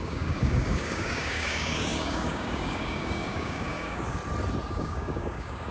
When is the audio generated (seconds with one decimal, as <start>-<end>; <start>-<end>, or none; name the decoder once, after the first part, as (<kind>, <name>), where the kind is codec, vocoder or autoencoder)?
0.0-4.2 (codec, DAC); 4.7-5.7